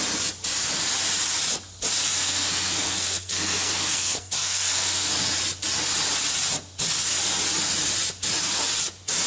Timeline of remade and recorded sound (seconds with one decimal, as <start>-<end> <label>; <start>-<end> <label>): 0.0-2.0 recorded; 2.0-5.1 remade; 5.1-9.3 recorded